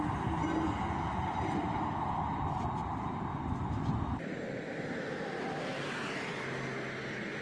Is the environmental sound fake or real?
real